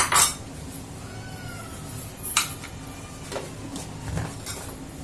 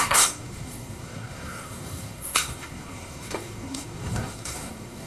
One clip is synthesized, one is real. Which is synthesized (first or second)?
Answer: second